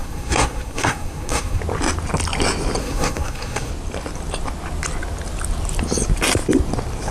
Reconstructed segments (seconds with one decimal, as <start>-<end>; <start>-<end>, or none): 0.0-1.6; 2.8-3.7